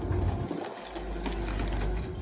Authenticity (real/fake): real